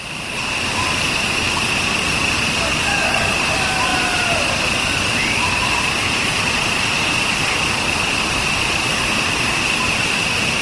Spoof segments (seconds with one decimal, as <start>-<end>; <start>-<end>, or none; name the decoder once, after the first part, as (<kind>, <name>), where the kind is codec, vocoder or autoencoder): 2.9-3.4 (codec, DAC)